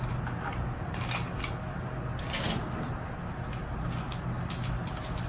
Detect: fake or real real